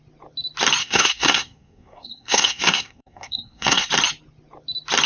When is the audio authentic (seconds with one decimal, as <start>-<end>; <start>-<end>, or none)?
0.0-0.8; 3.9-5.1